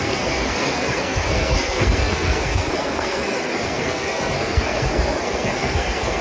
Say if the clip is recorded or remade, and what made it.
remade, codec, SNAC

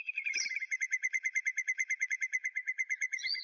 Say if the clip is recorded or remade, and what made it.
remade, vocoder, Vocos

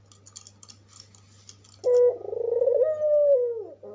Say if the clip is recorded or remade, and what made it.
recorded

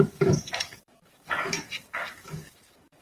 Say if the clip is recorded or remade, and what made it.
remade, codec, DAC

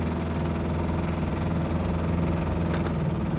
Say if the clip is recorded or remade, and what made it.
recorded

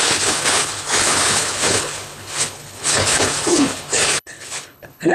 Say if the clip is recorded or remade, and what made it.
remade, codec, HILCodec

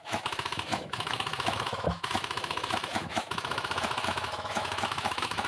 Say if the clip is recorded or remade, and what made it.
remade, autoencoder, DAC-VAE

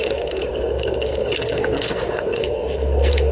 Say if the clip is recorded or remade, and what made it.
remade, codec, SNAC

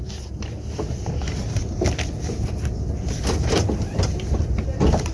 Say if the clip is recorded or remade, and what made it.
recorded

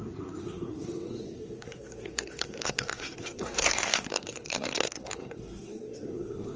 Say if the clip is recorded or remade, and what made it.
remade, codec, SNAC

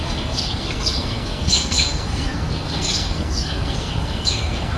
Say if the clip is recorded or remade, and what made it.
remade, codec, SNAC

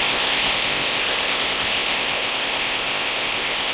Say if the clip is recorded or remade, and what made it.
remade, codec, ZipCodec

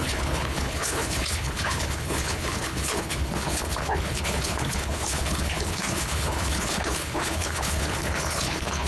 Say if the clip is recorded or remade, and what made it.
remade, codec, HILCodec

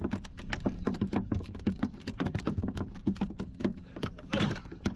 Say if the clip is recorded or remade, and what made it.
remade, codec, DAC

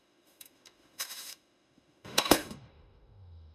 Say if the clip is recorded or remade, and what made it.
remade, autoencoder, DAC-VAE